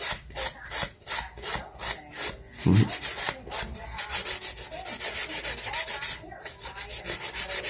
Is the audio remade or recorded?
recorded